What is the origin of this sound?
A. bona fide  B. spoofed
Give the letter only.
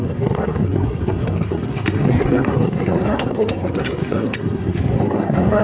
B